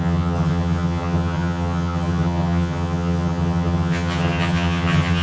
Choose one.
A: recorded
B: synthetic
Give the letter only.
B